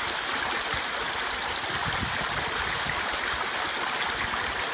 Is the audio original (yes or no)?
yes